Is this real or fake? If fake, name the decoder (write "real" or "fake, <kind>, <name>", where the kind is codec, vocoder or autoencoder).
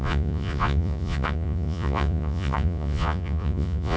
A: fake, vocoder, Vocos